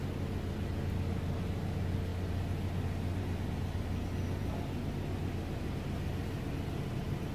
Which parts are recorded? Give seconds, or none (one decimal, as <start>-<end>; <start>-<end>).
0.0-7.3